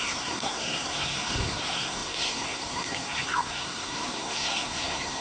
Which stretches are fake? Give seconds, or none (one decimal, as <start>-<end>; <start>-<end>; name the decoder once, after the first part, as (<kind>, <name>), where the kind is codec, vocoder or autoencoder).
0.0-5.2 (codec, SNAC)

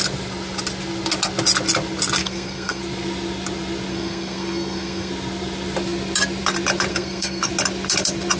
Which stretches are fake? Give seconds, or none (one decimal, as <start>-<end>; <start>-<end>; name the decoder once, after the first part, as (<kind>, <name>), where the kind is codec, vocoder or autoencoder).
2.2-2.8 (codec, SNAC); 3.9-5.1; 6.9-7.5

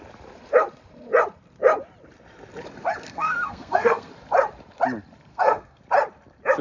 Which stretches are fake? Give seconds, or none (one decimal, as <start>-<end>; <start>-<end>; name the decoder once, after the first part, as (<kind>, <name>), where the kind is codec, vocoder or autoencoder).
3.0-4.1 (codec, SNAC); 5.3-5.8

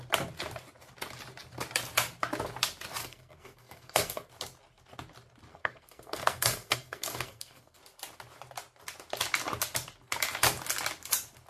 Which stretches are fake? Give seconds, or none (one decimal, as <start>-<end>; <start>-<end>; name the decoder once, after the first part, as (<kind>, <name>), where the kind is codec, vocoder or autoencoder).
3.0-4.3 (codec, SNAC); 5.5-7.8